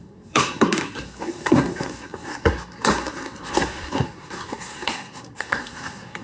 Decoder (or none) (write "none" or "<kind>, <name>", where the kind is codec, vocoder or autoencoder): codec, SNAC